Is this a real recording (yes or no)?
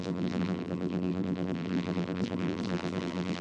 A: no